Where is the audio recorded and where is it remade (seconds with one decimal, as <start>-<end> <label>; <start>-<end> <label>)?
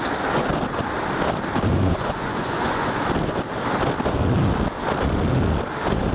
0.0-1.7 recorded; 1.7-2.9 remade; 2.9-6.1 recorded